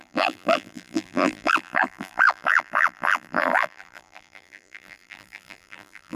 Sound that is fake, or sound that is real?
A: fake